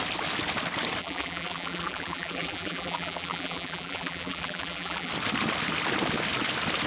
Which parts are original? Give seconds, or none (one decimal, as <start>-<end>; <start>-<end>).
0.0-1.0; 5.1-6.9